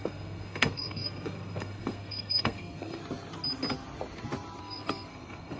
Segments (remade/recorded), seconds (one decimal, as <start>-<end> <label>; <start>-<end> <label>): 0.0-3.0 remade; 3.0-4.6 recorded; 4.6-5.6 remade